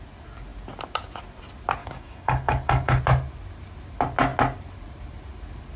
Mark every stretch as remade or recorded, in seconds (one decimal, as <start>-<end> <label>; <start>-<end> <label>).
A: 0.0-1.8 recorded; 1.8-3.0 remade; 3.0-5.8 recorded